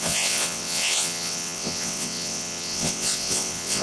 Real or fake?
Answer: fake